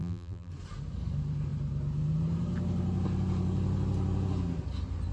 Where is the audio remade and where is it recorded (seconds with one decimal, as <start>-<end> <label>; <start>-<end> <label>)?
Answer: 0.0-0.5 remade; 0.5-5.1 recorded